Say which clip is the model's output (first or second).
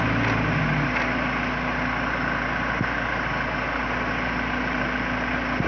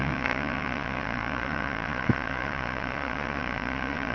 second